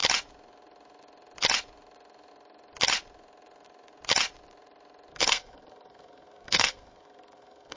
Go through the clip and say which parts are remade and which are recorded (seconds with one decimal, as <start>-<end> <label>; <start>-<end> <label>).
0.0-5.1 recorded; 5.1-7.8 remade